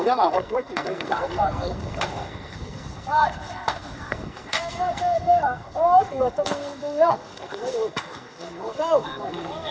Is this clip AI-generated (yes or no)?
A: yes